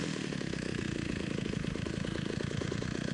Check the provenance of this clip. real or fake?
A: fake